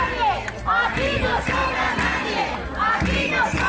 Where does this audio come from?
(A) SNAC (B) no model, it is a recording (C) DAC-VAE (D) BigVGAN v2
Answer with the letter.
B